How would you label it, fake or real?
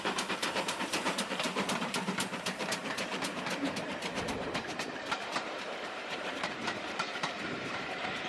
fake